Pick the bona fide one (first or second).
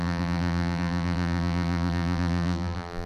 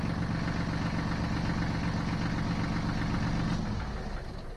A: second